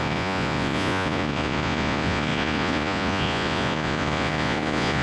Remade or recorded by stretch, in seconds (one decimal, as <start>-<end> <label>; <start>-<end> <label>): 0.0-5.0 remade